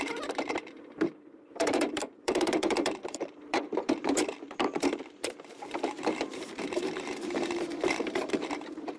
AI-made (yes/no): yes